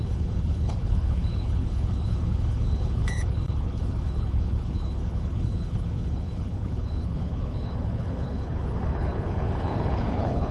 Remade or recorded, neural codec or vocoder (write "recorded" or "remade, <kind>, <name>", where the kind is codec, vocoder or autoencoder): remade, codec, HILCodec